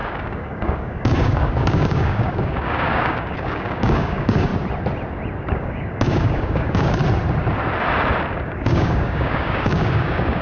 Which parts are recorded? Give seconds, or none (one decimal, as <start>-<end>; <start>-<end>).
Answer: 4.5-5.5; 7.0-8.3